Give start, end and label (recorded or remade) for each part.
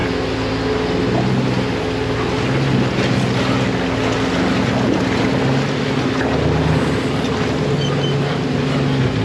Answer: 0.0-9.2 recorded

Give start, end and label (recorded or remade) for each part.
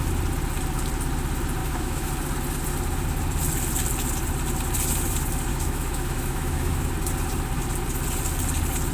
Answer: 0.0-1.6 recorded; 1.6-2.1 remade; 2.1-5.5 recorded; 5.5-6.9 remade; 6.9-8.9 recorded